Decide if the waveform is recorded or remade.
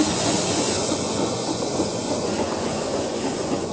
remade